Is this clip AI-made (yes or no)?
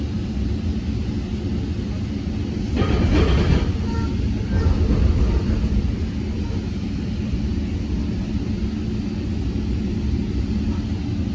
no